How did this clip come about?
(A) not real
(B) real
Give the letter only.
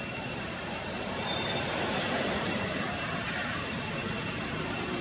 A